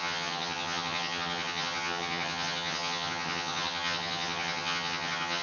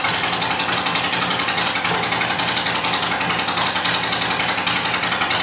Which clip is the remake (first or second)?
first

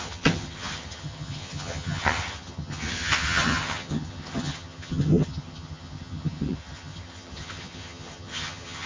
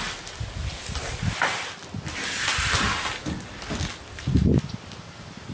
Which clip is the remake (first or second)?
first